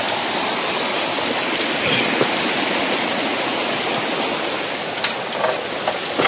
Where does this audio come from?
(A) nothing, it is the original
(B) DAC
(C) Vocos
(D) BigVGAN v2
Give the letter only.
A